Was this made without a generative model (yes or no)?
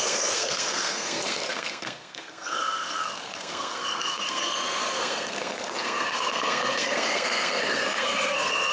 no